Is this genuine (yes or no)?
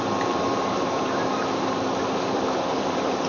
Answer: no